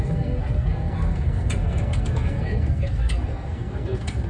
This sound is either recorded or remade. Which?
remade